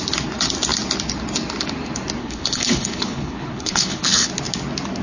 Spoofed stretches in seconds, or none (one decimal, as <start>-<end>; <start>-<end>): 2.2-4.3